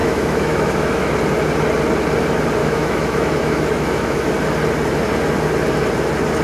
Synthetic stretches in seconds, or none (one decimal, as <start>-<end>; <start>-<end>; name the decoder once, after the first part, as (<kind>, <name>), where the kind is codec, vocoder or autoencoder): 0.0-1.1 (autoencoder, DAC-VAE); 2.6-4.3